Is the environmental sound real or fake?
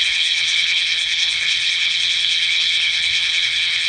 fake